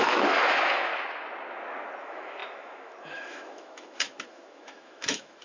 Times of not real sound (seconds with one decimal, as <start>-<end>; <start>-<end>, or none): 0.0-0.9; 2.0-5.4